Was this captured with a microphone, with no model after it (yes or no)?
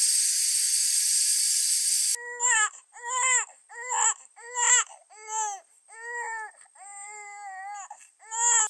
yes